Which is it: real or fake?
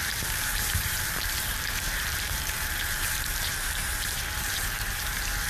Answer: fake